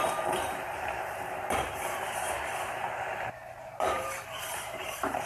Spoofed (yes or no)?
yes